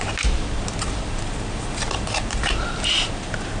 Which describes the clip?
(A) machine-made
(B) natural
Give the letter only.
B